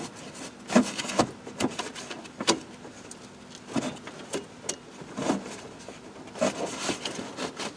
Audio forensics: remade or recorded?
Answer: recorded